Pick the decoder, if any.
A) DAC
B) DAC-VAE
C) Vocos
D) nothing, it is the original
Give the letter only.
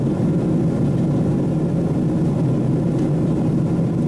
D